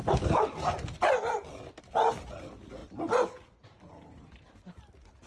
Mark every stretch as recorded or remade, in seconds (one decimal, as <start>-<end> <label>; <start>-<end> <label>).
0.0-5.3 recorded